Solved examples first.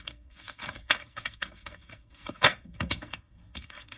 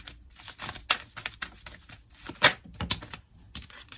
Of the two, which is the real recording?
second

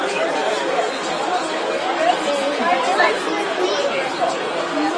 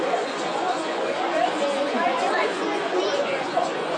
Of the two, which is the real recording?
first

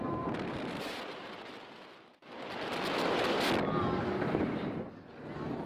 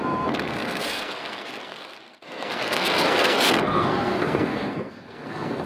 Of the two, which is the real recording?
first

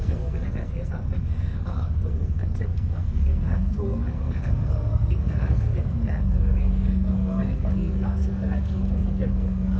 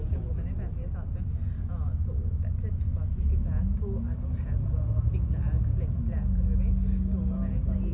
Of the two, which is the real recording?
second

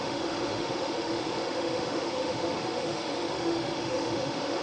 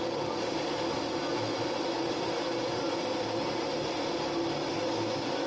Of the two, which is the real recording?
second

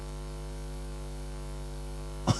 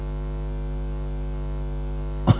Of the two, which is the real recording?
second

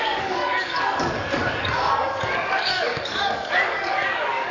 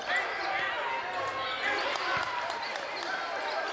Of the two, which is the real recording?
second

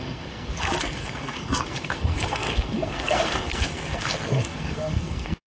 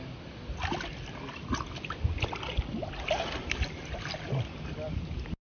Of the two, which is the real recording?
second